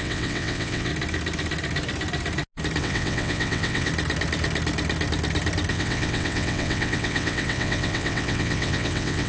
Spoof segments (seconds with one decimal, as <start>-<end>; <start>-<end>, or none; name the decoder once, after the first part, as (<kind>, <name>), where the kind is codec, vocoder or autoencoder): 0.0-0.9 (vocoder, WaveNeXt); 2.8-3.9; 5.7-9.3